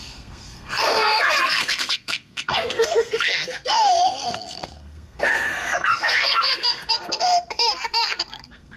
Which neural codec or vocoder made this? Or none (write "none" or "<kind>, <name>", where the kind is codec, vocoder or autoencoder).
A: codec, SNAC